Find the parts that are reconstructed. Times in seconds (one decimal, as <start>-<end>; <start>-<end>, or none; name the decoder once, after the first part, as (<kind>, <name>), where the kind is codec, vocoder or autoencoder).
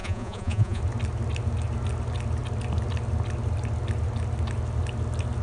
0.0-0.8 (vocoder, Vocos)